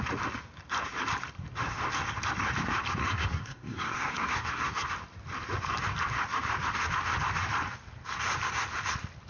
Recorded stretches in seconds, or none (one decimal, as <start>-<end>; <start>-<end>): 0.0-3.0; 4.9-9.3